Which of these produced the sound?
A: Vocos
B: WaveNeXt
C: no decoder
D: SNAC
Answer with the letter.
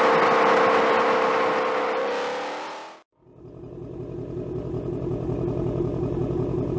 C